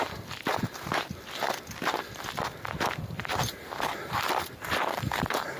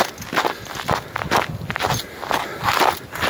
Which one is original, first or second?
second